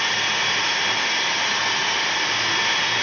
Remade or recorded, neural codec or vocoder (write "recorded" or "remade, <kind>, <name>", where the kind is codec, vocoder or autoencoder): recorded